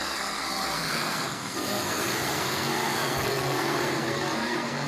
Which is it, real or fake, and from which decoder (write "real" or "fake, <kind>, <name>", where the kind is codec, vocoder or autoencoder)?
fake, codec, SNAC